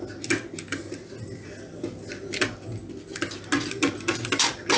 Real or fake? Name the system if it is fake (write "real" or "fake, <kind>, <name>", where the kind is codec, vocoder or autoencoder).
real